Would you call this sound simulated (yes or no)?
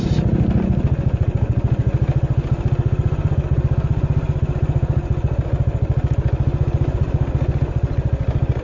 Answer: no